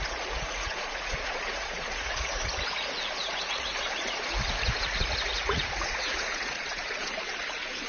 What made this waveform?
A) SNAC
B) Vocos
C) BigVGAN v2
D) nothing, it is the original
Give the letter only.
B